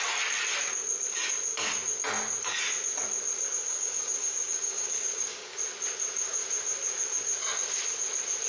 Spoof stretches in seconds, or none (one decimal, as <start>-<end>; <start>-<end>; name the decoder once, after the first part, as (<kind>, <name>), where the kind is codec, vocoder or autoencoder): 3.7-5.5 (codec, DAC)